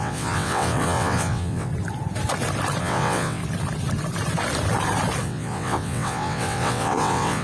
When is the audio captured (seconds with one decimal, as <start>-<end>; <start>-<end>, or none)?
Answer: 1.7-2.8; 3.4-5.2